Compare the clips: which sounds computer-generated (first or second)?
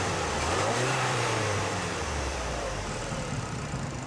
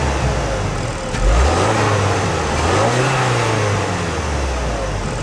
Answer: first